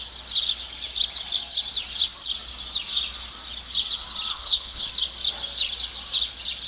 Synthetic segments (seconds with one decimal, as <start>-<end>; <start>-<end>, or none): 4.3-4.9